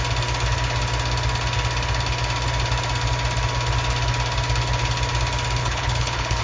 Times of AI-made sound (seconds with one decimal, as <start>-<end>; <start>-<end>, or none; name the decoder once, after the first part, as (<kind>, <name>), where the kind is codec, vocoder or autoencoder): 5.6-6.4 (codec, HILCodec)